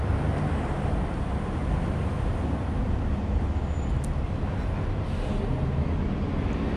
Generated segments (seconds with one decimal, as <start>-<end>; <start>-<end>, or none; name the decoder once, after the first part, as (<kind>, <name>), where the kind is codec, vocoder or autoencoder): none